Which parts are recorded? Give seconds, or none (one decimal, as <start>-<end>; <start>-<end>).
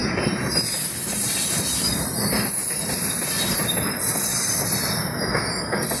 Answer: 3.6-4.3; 5.3-6.0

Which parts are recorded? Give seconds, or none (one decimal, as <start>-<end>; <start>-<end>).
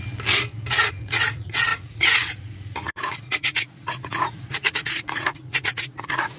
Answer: 0.0-0.9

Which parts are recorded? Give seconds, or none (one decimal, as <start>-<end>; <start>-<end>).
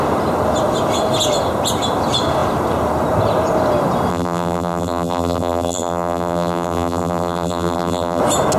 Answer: 0.0-4.1; 8.2-8.6